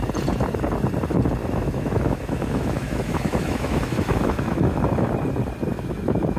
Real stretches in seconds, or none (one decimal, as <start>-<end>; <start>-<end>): 0.0-1.4; 5.1-5.7